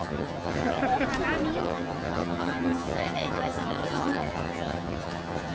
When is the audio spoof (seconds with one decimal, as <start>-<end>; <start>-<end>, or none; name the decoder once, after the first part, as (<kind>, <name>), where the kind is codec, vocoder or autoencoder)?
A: 0.0-0.8 (vocoder, HiFi-GAN); 1.6-5.5